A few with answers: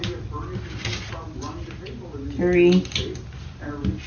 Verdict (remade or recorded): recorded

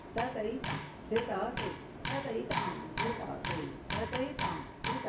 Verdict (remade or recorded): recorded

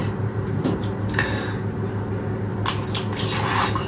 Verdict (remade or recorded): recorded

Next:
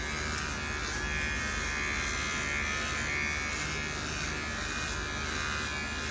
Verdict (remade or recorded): recorded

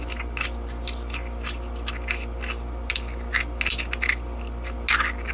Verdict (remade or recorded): recorded